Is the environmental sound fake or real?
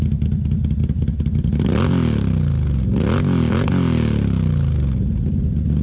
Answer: real